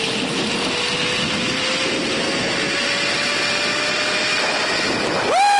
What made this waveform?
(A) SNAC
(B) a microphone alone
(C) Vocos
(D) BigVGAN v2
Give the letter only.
B